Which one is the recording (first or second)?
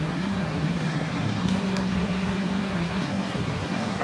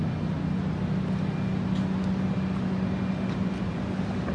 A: second